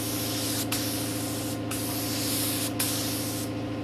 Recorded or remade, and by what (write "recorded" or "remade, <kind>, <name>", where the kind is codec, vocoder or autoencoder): recorded